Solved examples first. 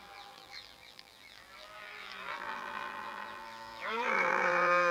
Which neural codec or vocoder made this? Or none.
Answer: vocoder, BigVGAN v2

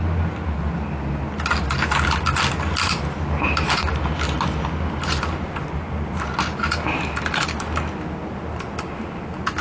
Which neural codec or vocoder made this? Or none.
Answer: none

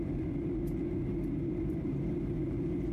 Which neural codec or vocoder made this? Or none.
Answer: none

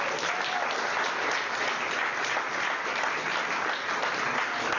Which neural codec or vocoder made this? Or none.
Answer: none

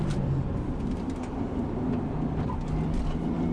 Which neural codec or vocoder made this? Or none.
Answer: vocoder, BigVGAN v2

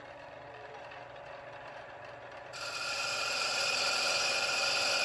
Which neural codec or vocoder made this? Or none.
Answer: vocoder, BigVGAN v2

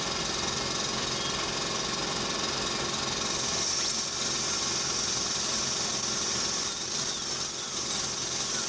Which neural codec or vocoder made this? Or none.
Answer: none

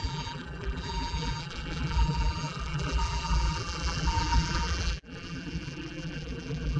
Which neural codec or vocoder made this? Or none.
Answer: vocoder, BigVGAN v2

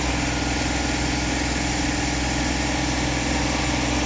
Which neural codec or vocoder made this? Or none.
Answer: none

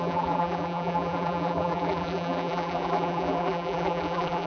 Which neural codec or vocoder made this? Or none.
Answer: vocoder, BigVGAN v2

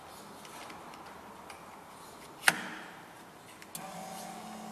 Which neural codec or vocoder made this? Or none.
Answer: none